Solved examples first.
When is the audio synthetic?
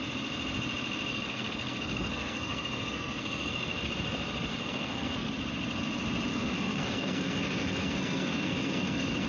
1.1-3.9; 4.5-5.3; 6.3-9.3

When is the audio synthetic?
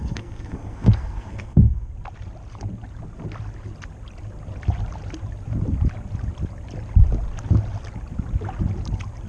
0.0-1.9